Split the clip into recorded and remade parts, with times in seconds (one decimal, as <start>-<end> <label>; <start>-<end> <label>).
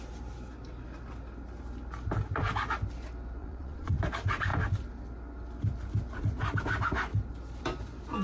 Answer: 0.0-3.4 recorded; 3.4-4.0 remade; 4.0-8.2 recorded